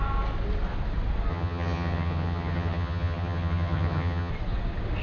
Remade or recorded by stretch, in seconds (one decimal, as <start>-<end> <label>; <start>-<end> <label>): 0.0-1.3 recorded; 1.3-4.3 remade; 4.3-5.0 recorded